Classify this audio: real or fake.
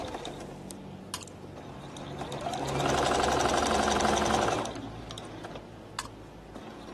real